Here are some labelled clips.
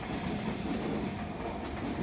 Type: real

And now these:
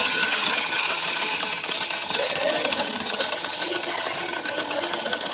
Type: fake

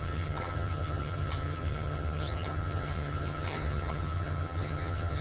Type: fake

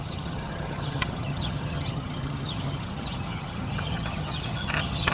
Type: fake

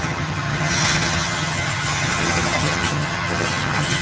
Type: fake